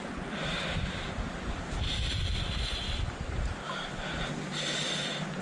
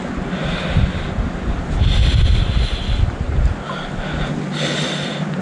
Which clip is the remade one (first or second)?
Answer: first